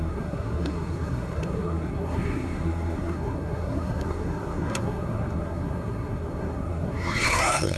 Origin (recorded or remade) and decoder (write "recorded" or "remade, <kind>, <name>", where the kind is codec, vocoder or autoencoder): remade, codec, SNAC